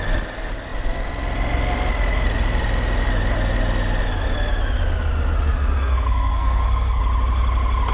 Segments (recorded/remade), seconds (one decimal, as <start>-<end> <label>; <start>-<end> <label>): 0.0-5.5 recorded; 5.5-7.0 remade; 7.0-7.9 recorded

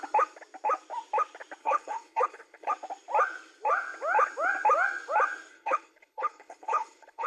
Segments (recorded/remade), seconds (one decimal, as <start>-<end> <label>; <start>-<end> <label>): 0.0-1.6 recorded; 1.6-2.7 remade; 2.7-5.5 recorded; 5.5-7.3 remade

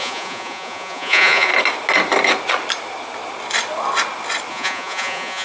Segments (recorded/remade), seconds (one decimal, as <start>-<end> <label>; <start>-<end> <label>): 0.0-1.5 remade; 1.5-4.5 recorded; 4.5-5.4 remade

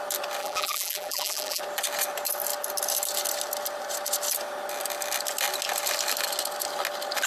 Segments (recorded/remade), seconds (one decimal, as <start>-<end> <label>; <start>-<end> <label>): 0.0-0.4 recorded; 0.4-1.6 remade; 1.6-7.3 recorded

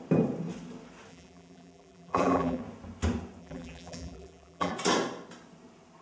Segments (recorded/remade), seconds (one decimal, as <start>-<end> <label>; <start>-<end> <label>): 0.0-1.1 recorded; 1.1-2.6 remade; 2.6-3.4 recorded; 3.4-4.7 remade; 4.7-6.0 recorded

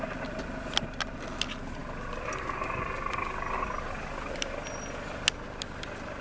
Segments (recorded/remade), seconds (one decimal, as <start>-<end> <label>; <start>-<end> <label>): 0.0-6.2 recorded

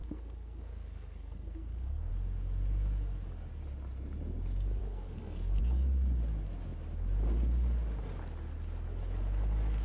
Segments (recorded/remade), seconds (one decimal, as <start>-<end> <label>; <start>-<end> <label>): 0.0-2.1 remade; 2.1-4.8 recorded; 4.8-5.6 remade; 5.6-9.8 recorded

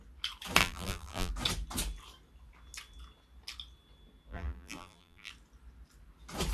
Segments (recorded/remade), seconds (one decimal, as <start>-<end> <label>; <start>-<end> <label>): 0.0-0.6 recorded; 0.6-1.3 remade; 1.3-4.3 recorded; 4.3-5.3 remade; 5.3-6.5 recorded